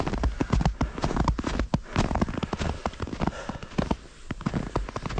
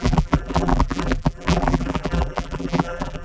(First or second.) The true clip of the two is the first